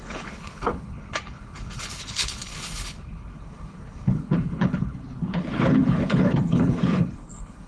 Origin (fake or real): fake